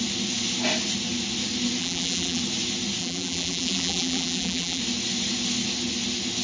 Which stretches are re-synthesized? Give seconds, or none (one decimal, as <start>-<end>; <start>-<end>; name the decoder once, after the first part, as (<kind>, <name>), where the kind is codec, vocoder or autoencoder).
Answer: 1.8-2.4 (vocoder, BigVGAN v2); 3.0-4.8